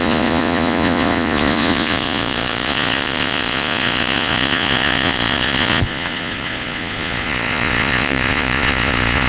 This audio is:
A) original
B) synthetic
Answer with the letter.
B